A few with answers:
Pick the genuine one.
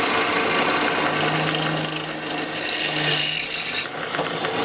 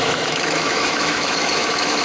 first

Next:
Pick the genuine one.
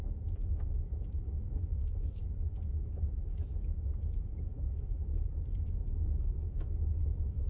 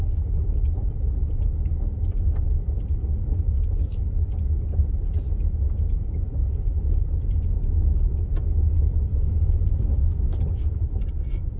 second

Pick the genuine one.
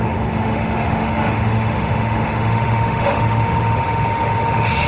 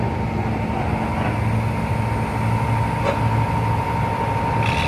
second